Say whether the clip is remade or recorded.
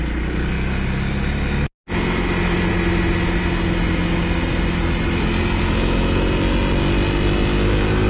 recorded